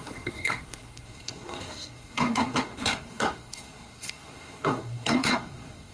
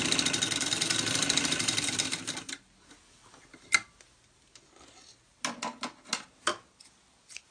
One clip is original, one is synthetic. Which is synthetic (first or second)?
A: first